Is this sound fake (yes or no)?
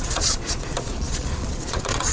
yes